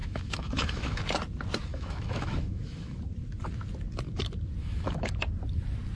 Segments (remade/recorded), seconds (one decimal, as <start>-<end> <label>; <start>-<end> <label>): 0.0-1.0 remade; 1.0-1.7 recorded; 1.7-3.0 remade; 3.0-4.6 recorded; 4.6-5.1 remade; 5.1-6.0 recorded